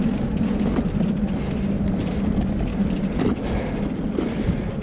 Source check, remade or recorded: recorded